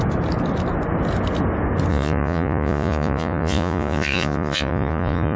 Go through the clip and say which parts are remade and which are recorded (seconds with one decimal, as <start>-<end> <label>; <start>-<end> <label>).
0.0-1.9 recorded; 1.9-5.4 remade